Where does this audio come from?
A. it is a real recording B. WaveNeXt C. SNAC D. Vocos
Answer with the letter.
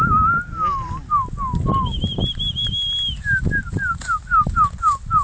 A